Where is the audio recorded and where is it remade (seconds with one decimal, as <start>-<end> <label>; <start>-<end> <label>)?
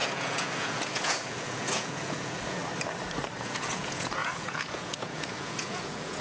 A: 0.0-2.6 remade; 2.6-3.4 recorded; 3.4-6.2 remade